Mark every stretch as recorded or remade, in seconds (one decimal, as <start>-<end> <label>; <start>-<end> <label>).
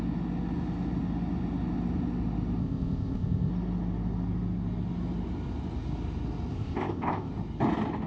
0.0-2.6 recorded; 2.6-3.5 remade; 3.5-6.5 recorded; 6.5-7.3 remade; 7.3-8.1 recorded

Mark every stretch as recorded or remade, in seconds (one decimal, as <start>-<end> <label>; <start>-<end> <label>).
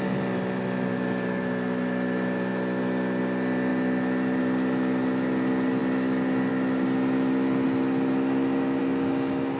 0.0-9.6 recorded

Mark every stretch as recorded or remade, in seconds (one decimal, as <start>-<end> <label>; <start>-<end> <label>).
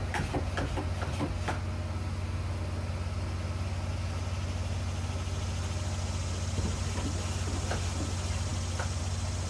0.0-9.5 recorded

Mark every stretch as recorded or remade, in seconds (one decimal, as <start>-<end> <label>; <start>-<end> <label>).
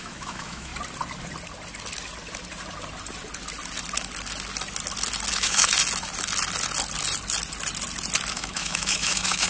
0.0-0.7 remade; 0.7-5.3 recorded; 5.3-5.7 remade; 5.7-8.3 recorded; 8.3-9.5 remade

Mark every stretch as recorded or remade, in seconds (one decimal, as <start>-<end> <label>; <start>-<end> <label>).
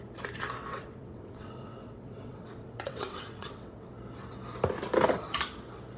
0.0-0.7 recorded; 0.7-3.9 remade; 3.9-6.0 recorded